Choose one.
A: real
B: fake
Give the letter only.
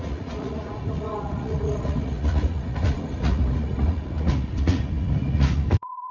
B